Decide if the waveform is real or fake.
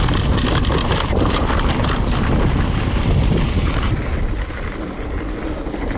real